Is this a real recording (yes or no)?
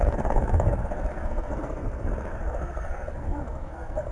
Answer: no